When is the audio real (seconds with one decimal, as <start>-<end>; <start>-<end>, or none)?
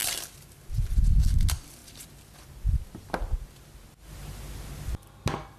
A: 0.7-1.8; 2.8-5.6